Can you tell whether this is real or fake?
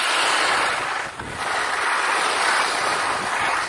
real